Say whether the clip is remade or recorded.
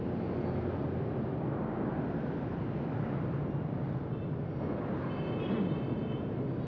recorded